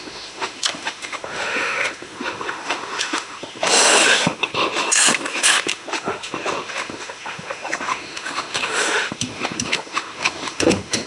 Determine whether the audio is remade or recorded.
remade